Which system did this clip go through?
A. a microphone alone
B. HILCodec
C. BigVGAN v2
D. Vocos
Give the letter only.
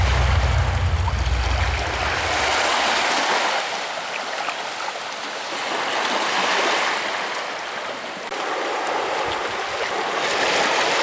A